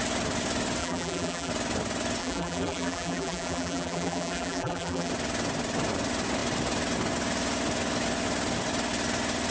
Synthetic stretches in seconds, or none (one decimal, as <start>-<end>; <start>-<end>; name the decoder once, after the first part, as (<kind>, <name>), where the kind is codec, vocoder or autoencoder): 0.8-1.5 (vocoder, BigVGAN v2); 2.2-5.1